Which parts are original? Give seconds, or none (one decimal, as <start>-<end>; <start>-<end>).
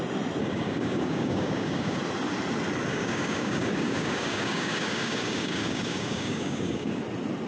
0.0-0.4; 2.0-2.9; 7.0-7.5